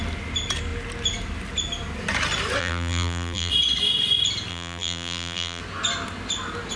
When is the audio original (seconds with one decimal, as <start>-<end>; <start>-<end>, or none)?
0.0-2.6; 3.5-4.5; 5.6-6.8